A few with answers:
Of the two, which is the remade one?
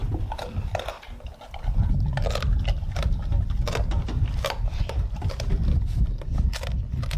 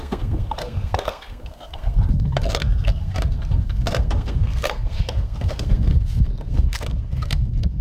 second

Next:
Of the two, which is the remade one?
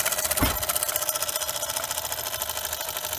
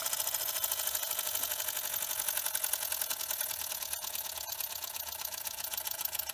second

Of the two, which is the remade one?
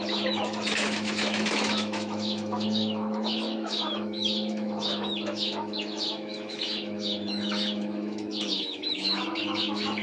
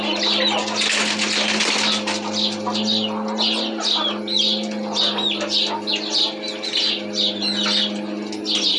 first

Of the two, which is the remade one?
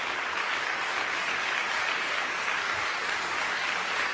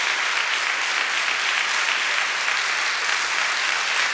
first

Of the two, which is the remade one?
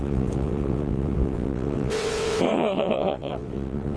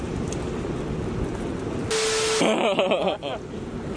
first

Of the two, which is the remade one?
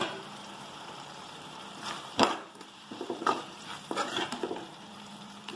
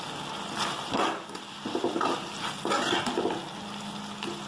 first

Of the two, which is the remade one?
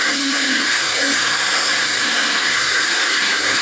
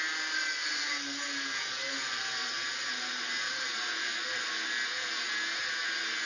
first